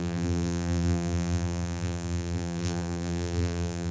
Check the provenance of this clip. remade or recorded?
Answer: remade